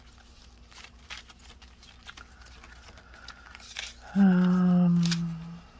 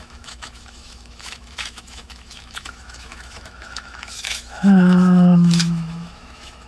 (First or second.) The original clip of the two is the first